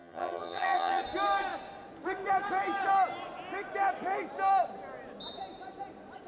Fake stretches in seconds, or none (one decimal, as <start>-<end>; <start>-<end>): 0.0-1.0